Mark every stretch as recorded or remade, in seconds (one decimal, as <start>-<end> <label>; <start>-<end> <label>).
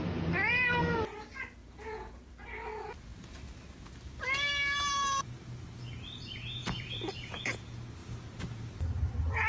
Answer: 0.0-1.6 recorded; 1.6-2.3 remade; 2.3-6.6 recorded; 6.6-7.6 remade; 7.6-9.5 recorded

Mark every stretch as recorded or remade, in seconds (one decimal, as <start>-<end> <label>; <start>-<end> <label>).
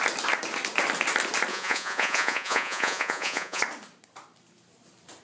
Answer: 0.0-1.5 recorded; 1.5-3.6 remade; 3.6-5.2 recorded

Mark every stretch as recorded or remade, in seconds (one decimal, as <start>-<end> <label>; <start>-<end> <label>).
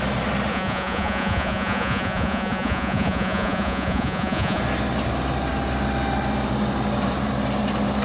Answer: 0.0-0.5 recorded; 0.5-4.6 remade; 4.6-8.0 recorded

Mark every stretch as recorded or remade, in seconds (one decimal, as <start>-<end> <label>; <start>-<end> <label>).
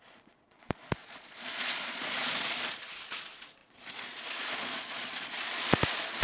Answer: 0.0-6.2 remade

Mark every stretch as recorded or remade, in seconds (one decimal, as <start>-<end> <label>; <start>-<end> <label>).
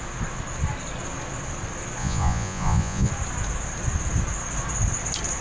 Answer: 0.0-2.0 recorded; 2.0-3.1 remade; 3.1-5.4 recorded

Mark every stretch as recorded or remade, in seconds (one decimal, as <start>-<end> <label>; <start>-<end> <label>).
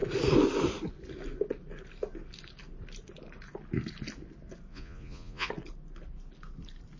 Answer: 0.0-4.7 recorded; 4.7-5.5 remade; 5.5-7.0 recorded